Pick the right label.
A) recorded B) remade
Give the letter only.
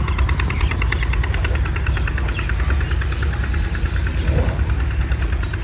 A